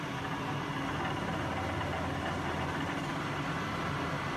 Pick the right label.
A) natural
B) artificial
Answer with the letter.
A